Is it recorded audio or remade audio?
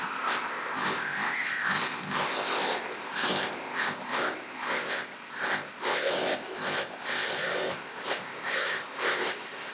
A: remade